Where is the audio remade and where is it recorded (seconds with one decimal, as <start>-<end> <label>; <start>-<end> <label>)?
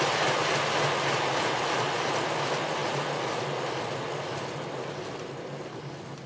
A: 0.0-6.3 recorded